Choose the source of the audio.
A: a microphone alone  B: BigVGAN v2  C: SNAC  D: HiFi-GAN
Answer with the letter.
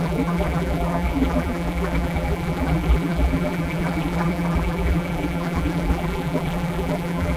B